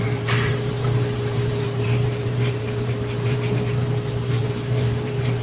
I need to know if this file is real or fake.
fake